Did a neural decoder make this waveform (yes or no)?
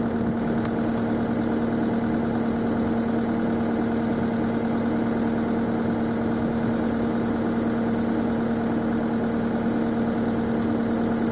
no